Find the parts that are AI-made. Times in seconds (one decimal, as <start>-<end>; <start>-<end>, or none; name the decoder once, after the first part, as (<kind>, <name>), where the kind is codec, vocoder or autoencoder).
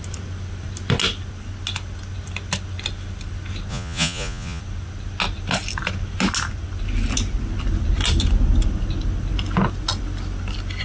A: 3.7-4.6 (vocoder, Vocos)